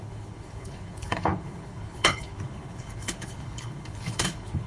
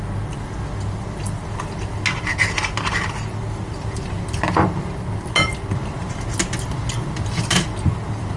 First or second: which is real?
second